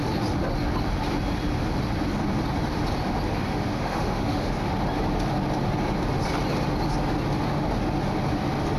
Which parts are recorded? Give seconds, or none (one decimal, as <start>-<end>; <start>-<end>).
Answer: 0.0-3.7; 4.5-8.8